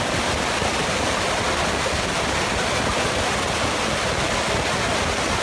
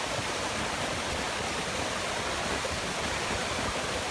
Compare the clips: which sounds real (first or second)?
first